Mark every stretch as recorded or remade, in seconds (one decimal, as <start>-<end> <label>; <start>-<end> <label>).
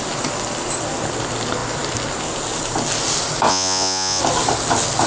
0.0-3.5 recorded; 3.5-4.2 remade; 4.2-5.1 recorded